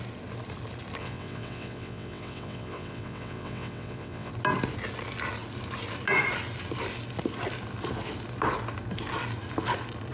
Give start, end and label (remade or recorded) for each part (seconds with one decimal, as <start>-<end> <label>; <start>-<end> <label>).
0.0-1.0 recorded; 1.0-4.3 remade; 4.3-10.1 recorded